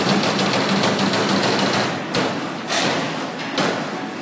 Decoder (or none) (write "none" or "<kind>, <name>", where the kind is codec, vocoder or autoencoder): none